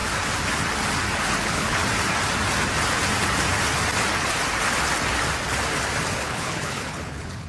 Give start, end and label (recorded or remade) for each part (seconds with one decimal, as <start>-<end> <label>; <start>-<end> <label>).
0.0-1.4 recorded; 1.4-1.8 remade; 1.8-6.2 recorded; 6.2-7.5 remade